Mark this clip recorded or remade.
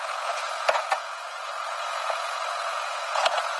remade